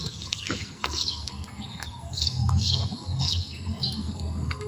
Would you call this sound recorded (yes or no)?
no